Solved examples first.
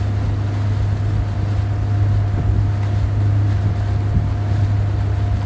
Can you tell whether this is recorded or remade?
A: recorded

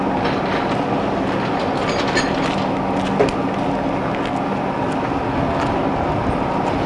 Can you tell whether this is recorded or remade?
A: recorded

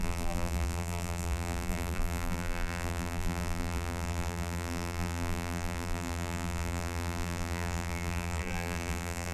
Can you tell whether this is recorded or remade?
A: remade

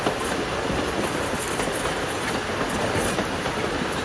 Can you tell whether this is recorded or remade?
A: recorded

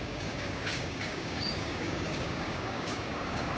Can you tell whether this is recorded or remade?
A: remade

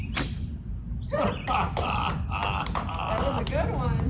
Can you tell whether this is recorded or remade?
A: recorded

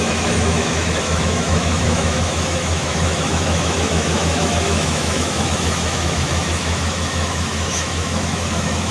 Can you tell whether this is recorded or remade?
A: remade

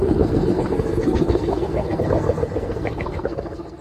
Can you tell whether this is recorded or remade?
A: remade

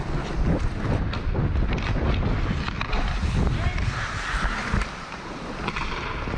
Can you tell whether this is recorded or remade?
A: recorded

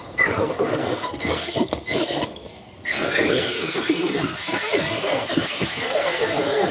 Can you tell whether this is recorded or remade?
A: remade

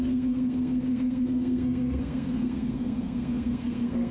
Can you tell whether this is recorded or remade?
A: remade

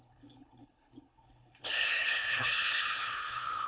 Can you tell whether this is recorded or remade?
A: remade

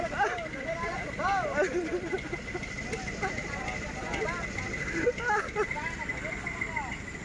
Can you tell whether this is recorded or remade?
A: recorded